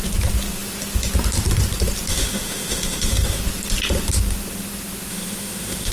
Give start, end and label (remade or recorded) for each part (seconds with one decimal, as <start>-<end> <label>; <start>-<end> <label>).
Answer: 0.0-2.1 recorded; 2.1-3.4 remade; 3.4-5.1 recorded; 5.1-5.9 remade